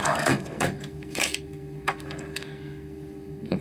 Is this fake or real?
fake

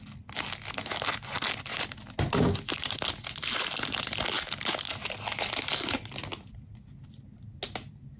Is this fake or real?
real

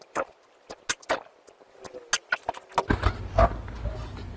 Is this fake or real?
real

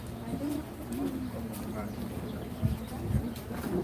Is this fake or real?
real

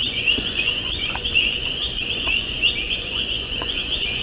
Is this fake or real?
fake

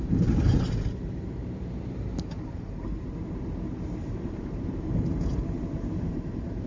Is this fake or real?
fake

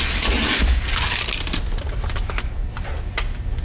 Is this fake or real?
real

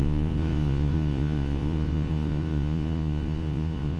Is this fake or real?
fake